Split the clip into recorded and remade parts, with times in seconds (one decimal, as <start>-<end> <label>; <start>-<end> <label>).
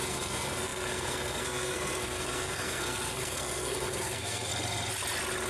0.0-4.5 remade; 4.5-5.5 recorded